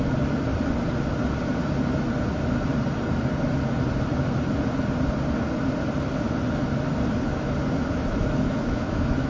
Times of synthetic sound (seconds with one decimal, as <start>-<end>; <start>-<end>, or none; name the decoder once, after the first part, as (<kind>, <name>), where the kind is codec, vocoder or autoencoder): 8.2-9.3 (autoencoder, DAC-VAE)